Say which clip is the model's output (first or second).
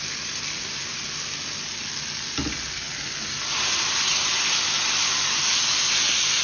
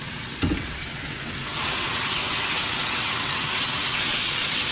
second